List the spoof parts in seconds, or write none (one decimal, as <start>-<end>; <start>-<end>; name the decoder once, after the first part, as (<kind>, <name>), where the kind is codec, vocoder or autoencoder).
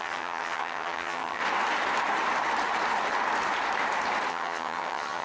0.0-1.4 (vocoder, HiFi-GAN); 4.3-5.2